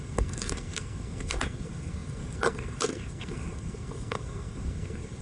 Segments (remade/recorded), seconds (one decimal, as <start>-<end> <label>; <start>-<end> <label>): 0.0-5.2 remade